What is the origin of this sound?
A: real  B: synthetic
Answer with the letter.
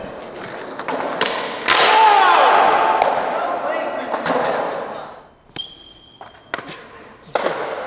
A